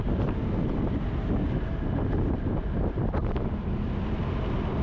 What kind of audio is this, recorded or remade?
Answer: recorded